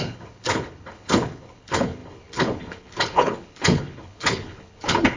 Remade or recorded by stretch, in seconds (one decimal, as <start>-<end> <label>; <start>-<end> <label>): 0.0-5.2 remade